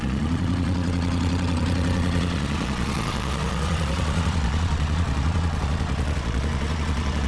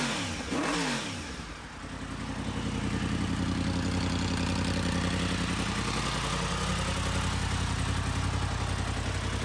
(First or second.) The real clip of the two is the second